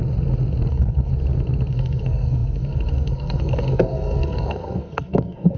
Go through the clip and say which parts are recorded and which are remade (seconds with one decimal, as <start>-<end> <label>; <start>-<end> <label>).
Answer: 0.0-0.7 recorded; 0.7-1.1 remade; 1.1-1.7 recorded; 1.7-5.6 remade